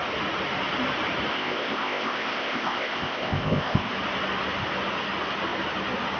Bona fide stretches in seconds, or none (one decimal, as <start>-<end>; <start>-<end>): 0.0-1.3; 3.9-6.2